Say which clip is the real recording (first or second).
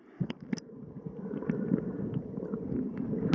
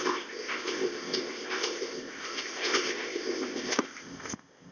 first